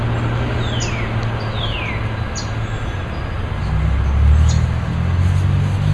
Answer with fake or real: real